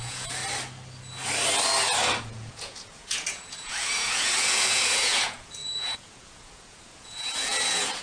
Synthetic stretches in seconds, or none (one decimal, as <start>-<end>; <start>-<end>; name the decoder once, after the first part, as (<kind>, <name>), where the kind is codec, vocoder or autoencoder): 0.0-0.4 (vocoder, Vocos); 2.2-8.0

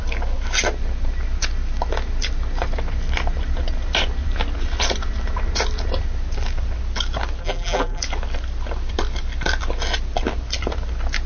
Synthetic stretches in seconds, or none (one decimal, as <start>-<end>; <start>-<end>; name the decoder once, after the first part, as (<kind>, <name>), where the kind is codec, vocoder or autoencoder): 7.4-8.0 (vocoder, BigVGAN v2)

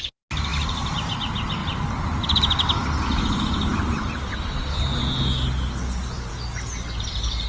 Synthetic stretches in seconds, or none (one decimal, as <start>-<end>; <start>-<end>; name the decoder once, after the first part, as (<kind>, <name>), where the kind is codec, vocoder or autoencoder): none

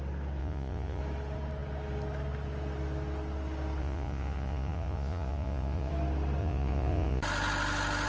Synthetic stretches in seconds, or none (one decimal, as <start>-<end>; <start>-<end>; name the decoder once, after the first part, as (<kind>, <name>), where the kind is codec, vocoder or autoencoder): 0.4-1.0 (vocoder, Vocos); 3.8-5.9; 6.4-7.2

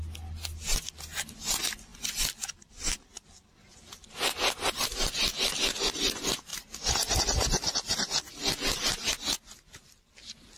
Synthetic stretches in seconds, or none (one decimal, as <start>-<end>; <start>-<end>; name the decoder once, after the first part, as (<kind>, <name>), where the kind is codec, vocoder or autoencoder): 1.9-5.9 (vocoder, BigVGAN v2)

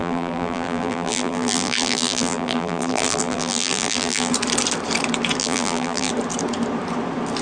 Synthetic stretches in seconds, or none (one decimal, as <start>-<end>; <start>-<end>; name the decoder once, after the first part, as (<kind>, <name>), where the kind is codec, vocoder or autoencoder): 0.0-4.3 (vocoder, BigVGAN v2); 5.4-6.1